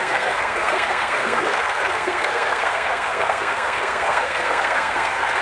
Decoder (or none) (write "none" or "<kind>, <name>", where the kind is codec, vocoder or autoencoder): codec, SNAC